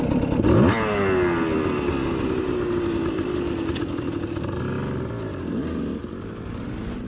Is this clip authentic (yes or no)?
yes